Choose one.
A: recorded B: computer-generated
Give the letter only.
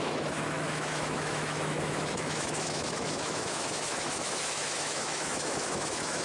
B